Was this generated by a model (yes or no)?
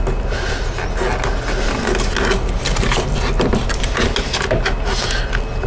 no